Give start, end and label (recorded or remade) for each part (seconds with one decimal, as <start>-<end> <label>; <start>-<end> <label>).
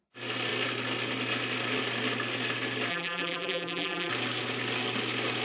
0.0-2.9 recorded; 2.9-4.1 remade; 4.1-5.4 recorded